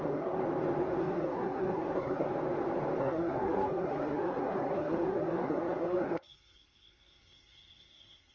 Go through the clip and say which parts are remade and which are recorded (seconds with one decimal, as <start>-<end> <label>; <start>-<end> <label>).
0.0-0.4 remade; 0.4-1.0 recorded; 1.0-2.3 remade; 2.3-3.0 recorded; 3.0-8.3 remade